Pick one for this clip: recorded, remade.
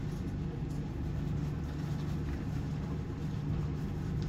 recorded